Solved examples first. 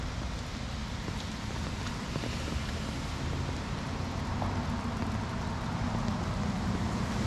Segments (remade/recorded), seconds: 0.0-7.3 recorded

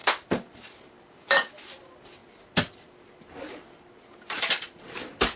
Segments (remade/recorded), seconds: 0.0-5.4 recorded

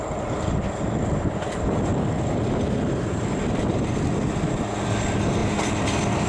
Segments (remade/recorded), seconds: 0.0-6.3 recorded

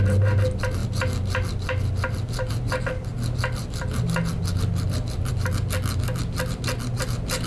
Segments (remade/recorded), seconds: 0.0-7.5 recorded

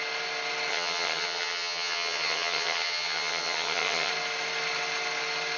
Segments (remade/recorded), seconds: 0.0-0.7 recorded; 0.7-4.1 remade; 4.1-5.6 recorded

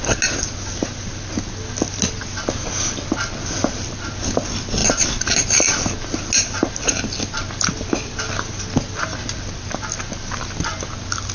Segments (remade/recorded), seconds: 0.0-11.3 recorded